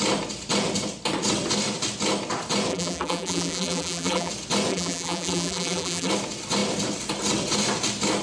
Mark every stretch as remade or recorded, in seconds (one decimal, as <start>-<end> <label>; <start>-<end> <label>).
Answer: 0.0-2.7 recorded; 2.7-4.3 remade; 4.3-4.7 recorded; 4.7-6.1 remade; 6.1-8.2 recorded